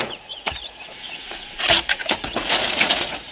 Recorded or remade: remade